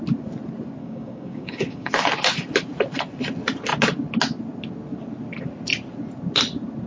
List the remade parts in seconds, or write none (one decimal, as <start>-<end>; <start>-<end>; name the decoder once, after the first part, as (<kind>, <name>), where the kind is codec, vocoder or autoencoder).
0.8-1.9 (codec, DAC)